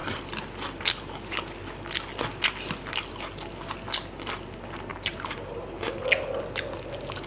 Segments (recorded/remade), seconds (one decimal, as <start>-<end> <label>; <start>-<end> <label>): 0.0-7.3 recorded